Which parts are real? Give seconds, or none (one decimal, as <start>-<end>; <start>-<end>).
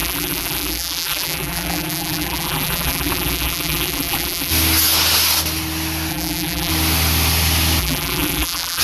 4.5-6.1; 6.7-7.8